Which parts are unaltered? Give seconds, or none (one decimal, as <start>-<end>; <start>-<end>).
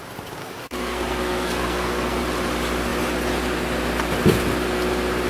0.0-0.4; 2.2-5.3